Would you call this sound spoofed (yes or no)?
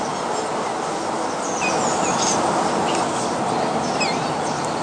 no